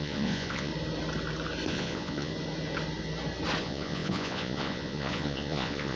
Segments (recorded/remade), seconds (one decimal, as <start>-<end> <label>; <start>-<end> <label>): 0.0-0.7 remade; 0.7-1.7 recorded; 1.7-2.3 remade; 2.3-3.6 recorded; 3.6-6.0 remade